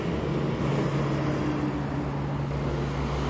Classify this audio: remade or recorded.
recorded